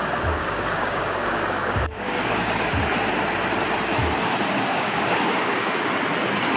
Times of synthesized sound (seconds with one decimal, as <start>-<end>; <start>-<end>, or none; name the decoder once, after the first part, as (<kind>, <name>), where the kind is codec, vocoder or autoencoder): 0.4-2.7 (codec, DAC); 4.7-5.9